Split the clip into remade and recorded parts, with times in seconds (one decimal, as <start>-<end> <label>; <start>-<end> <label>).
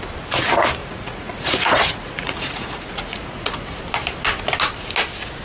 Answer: 0.0-0.8 recorded; 0.8-3.8 remade; 3.8-5.4 recorded